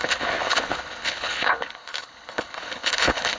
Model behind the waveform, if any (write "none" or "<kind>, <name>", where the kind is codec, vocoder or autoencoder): codec, HILCodec